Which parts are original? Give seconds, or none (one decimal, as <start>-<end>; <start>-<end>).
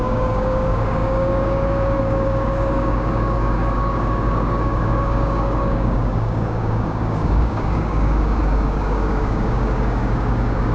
none